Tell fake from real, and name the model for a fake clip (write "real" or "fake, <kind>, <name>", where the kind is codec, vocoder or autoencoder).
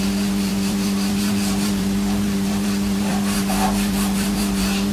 fake, vocoder, BigVGAN v2